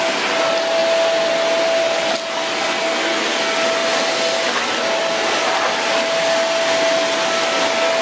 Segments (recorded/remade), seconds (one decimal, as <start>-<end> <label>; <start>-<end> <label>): 0.0-8.0 recorded